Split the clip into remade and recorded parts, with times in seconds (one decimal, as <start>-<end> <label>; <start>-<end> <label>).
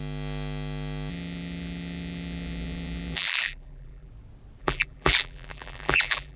0.0-1.1 recorded; 1.1-4.1 remade; 4.1-4.6 recorded; 4.6-6.4 remade